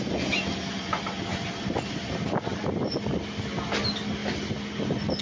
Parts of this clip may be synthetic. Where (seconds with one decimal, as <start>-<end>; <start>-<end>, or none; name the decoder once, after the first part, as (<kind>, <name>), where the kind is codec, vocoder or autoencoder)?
none